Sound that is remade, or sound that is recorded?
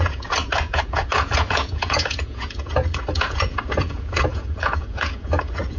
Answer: remade